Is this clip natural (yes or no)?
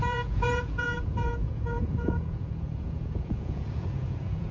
no